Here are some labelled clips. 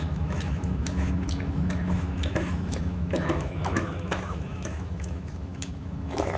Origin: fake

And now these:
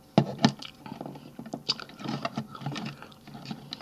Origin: real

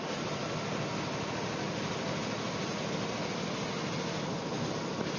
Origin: real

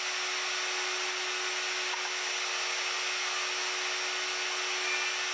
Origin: real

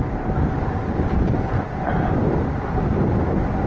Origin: real